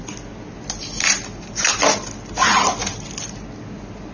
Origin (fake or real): real